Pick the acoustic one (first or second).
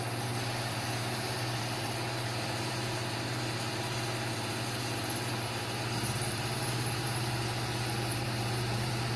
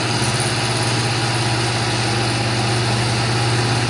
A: second